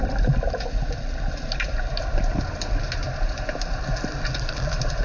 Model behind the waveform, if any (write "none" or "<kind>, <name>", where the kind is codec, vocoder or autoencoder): none